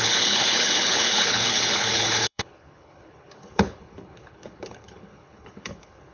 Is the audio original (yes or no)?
no